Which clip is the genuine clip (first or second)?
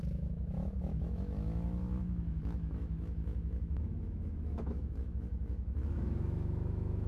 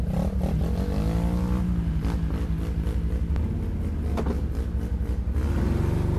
second